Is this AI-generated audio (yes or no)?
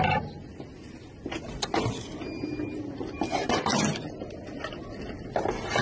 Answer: no